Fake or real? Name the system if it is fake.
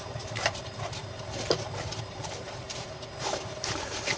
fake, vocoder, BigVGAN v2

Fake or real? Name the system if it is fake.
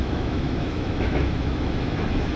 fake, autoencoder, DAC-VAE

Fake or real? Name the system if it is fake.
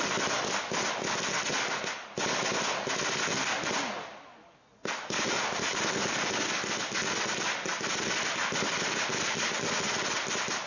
real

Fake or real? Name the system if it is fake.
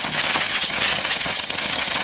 fake, vocoder, HiFi-GAN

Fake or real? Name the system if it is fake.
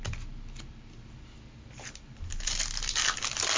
real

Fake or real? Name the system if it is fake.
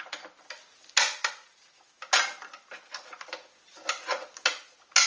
real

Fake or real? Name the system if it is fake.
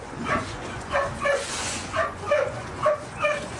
fake, vocoder, Vocos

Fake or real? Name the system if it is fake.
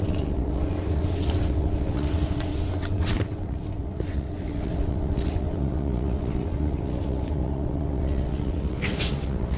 fake, vocoder, WaveNeXt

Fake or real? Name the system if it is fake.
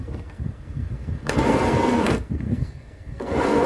fake, codec, SNAC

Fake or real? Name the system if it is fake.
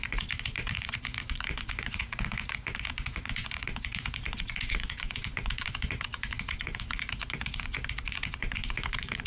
fake, vocoder, Vocos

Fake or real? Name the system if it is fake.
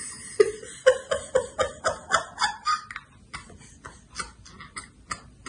real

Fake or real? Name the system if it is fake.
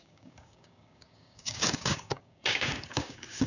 fake, codec, DAC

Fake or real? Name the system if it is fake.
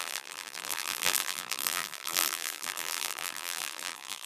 fake, vocoder, BigVGAN v2